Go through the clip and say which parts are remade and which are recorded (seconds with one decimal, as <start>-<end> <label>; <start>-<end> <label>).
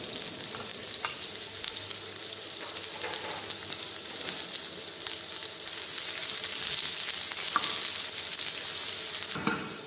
0.0-0.7 recorded; 0.7-1.3 remade; 1.3-9.9 recorded